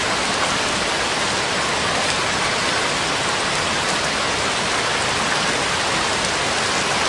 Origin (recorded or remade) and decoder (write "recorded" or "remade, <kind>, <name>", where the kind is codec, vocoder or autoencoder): recorded